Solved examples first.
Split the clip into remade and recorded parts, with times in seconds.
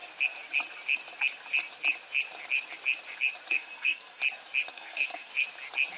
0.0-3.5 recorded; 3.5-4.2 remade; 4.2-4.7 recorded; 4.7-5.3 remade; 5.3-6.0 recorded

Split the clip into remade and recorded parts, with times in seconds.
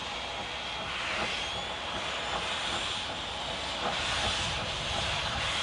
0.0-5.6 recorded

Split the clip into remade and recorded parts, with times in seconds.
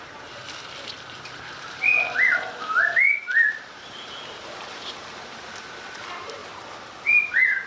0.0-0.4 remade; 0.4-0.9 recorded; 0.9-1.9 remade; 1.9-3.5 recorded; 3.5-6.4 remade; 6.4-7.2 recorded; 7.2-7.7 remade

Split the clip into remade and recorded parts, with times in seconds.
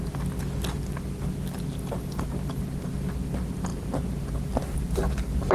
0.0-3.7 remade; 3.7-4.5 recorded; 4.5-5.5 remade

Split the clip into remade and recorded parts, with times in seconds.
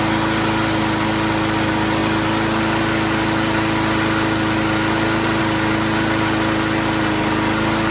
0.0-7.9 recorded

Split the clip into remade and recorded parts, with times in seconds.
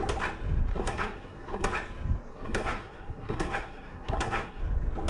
0.0-0.7 recorded; 0.7-1.7 remade; 1.7-2.3 recorded; 2.3-4.6 remade; 4.6-5.1 recorded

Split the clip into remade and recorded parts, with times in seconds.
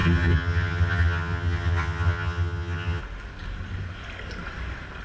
0.0-3.0 remade; 3.0-5.0 recorded